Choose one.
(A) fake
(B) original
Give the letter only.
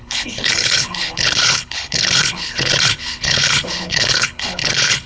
A